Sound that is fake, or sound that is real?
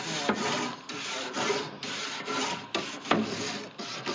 real